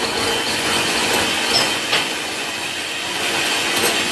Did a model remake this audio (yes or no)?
yes